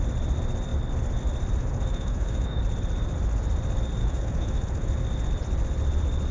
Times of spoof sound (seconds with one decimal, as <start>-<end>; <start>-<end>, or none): 1.6-2.6; 4.0-4.9